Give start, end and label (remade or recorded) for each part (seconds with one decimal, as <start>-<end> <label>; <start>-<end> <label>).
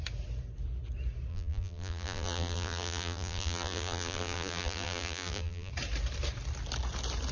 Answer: 0.0-1.3 recorded; 1.3-5.7 remade; 5.7-7.3 recorded